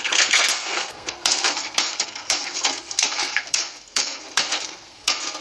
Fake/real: fake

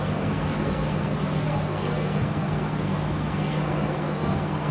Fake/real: fake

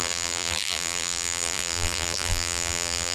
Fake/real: fake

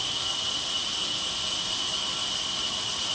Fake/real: real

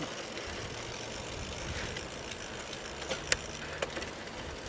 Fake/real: real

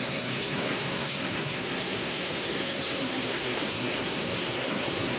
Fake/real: fake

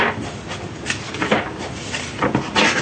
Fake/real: real